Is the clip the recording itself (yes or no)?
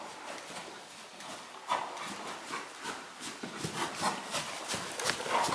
yes